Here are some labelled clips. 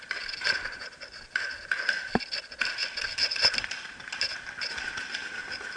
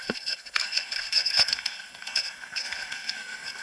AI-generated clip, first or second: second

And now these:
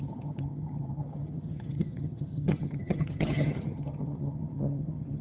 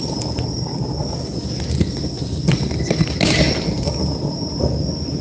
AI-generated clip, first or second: first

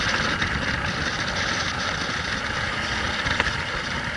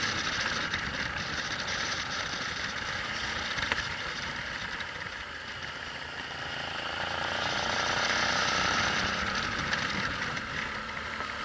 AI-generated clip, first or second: second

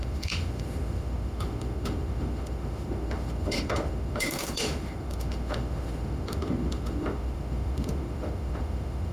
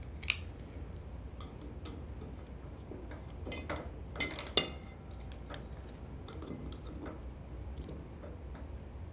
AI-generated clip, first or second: first